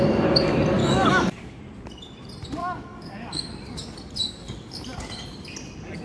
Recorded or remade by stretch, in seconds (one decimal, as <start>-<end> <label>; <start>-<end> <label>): 0.0-0.8 recorded; 0.8-1.6 remade; 1.6-2.6 recorded; 2.6-3.5 remade; 3.5-4.2 recorded; 4.2-4.8 remade; 4.8-6.0 recorded